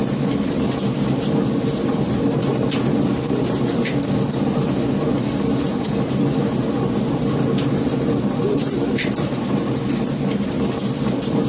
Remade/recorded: recorded